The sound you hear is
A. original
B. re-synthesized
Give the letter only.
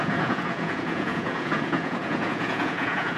B